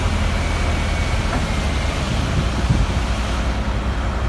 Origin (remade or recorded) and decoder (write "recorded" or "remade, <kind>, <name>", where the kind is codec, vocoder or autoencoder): recorded